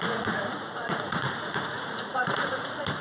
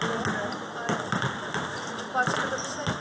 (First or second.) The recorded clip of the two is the second